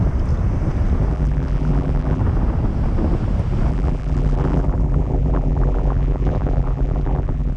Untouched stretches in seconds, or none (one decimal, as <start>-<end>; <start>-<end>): 0.0-1.1; 2.2-3.7